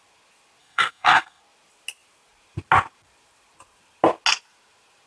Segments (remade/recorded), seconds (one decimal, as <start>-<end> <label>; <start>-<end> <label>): 0.0-0.6 recorded; 0.6-1.4 remade; 1.4-5.1 recorded